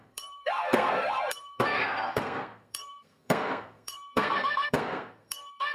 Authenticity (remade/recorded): remade